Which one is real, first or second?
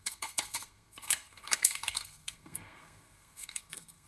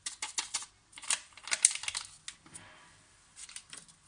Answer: second